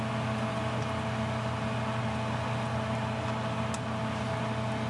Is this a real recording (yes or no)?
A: yes